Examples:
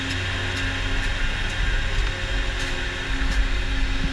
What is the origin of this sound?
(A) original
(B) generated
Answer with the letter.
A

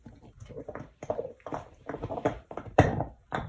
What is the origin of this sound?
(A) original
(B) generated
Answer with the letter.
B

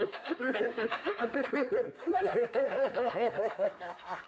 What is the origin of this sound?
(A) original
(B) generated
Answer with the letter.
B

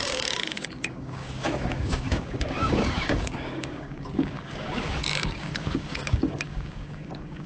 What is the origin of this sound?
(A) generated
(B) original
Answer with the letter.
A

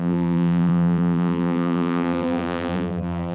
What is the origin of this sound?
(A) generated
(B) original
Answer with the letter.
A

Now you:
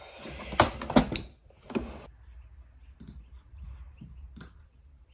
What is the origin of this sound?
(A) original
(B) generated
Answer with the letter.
A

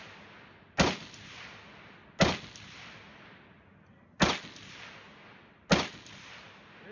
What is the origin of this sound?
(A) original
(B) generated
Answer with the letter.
A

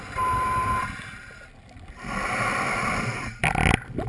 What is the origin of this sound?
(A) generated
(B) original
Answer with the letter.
B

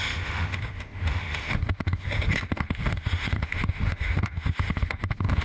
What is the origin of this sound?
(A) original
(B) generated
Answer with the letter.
B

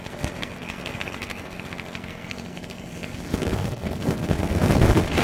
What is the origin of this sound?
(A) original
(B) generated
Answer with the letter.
B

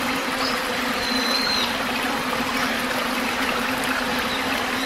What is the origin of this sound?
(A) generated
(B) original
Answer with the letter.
A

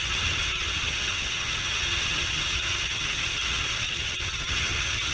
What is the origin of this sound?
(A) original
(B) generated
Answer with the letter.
B